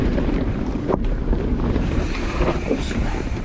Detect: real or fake fake